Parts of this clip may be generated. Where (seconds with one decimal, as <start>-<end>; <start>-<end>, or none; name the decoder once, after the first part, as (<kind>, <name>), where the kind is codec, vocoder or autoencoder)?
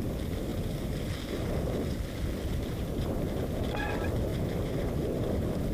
4.3-4.9 (vocoder, BigVGAN v2)